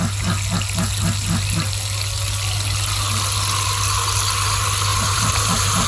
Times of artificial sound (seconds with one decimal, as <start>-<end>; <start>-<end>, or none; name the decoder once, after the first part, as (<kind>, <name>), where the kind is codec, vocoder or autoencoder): 4.9-5.9 (vocoder, BigVGAN v2)